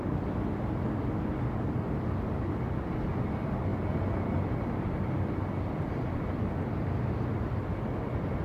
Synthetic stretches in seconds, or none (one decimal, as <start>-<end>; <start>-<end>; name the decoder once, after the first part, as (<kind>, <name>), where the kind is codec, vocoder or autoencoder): none